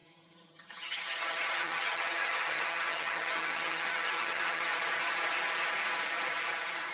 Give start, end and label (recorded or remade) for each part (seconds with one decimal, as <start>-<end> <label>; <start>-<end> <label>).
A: 0.0-4.7 remade; 4.7-6.9 recorded